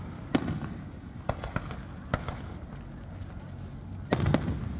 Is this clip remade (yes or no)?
no